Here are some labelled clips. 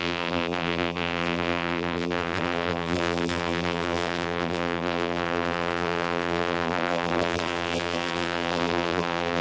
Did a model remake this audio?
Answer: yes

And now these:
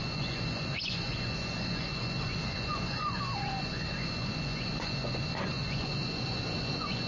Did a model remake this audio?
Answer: yes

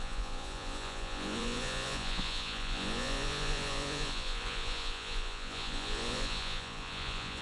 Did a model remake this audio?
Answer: yes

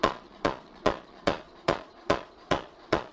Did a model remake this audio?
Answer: yes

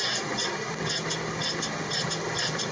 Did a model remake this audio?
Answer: no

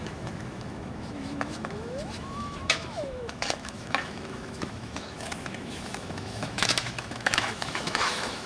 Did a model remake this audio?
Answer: yes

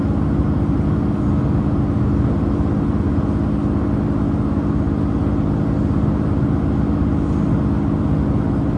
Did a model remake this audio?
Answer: no